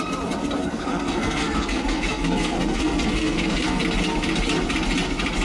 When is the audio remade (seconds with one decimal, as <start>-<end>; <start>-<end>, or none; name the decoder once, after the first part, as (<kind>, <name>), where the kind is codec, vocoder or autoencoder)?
0.6-3.8 (codec, SNAC)

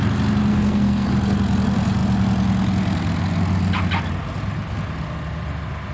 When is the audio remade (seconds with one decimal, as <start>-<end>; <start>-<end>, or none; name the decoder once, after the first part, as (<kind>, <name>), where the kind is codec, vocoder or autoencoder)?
0.5-1.1 (codec, SNAC)